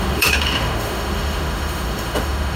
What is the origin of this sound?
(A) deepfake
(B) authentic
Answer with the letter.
A